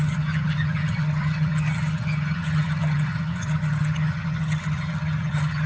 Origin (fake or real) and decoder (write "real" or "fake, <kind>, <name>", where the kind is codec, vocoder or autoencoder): fake, vocoder, HiFi-GAN